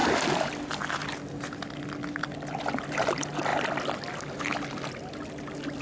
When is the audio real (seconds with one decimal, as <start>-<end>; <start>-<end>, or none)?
0.0-5.8